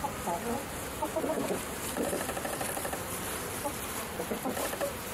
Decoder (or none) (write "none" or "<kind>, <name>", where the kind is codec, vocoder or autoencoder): vocoder, BigVGAN v2